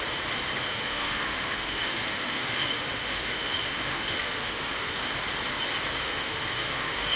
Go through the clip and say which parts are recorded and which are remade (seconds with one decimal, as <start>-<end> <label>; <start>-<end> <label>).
0.0-0.7 recorded; 0.7-5.0 remade; 5.0-6.0 recorded; 6.0-7.2 remade